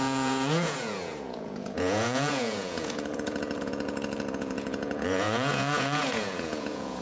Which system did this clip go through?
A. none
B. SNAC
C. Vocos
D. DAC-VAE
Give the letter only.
C